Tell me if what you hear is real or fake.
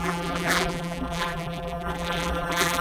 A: fake